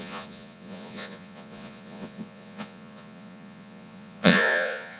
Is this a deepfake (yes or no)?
yes